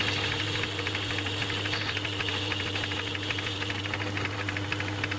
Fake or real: real